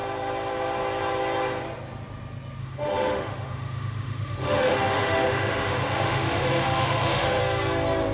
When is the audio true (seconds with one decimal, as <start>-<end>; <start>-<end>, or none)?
0.0-2.6; 7.4-8.1